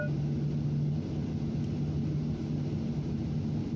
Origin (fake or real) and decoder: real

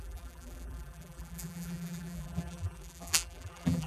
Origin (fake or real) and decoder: fake, vocoder, BigVGAN v2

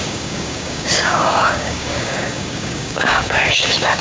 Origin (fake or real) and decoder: fake, codec, DAC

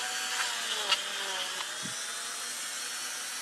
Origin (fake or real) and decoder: real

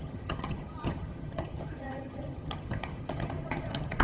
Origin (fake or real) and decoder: fake, vocoder, HiFi-GAN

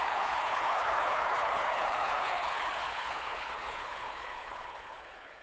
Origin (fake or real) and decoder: fake, codec, HILCodec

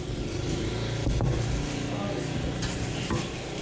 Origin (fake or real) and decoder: real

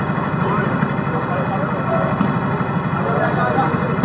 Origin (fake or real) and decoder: real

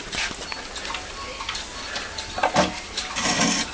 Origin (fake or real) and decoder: real